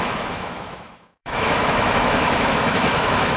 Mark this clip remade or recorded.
remade